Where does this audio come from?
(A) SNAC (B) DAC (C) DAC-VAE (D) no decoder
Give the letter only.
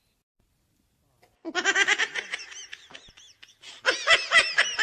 D